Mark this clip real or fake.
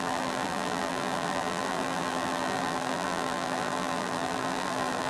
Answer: fake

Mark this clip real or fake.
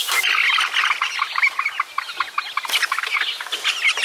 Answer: real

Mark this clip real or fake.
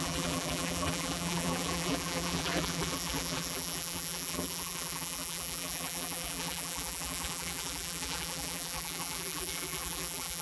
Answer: fake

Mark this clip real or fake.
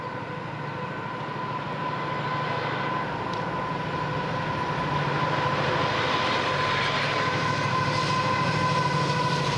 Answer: fake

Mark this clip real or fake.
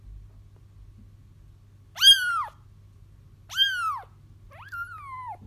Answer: real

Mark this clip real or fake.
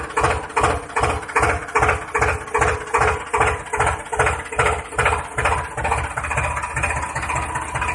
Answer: real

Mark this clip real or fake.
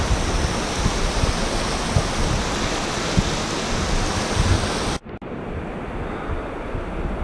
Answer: real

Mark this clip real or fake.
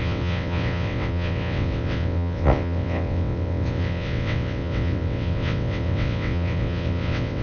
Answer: fake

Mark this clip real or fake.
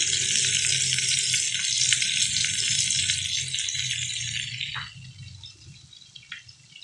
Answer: real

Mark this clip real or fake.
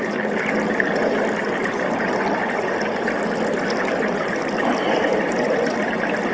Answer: real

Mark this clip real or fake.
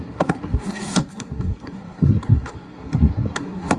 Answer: fake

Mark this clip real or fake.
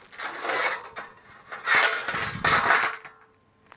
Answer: real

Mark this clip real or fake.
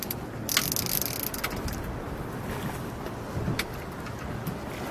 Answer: real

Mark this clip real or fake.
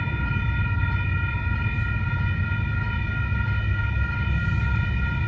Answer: real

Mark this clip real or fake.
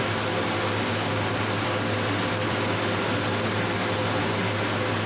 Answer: real